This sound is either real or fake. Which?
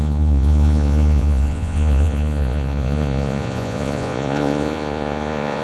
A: fake